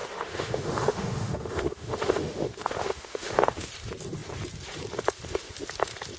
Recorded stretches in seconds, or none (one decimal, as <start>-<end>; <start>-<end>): 3.7-6.2